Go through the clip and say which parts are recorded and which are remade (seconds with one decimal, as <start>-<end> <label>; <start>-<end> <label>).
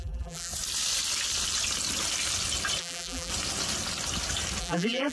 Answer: 0.0-0.5 remade; 0.5-2.8 recorded; 2.8-3.3 remade; 3.3-4.6 recorded; 4.6-5.1 remade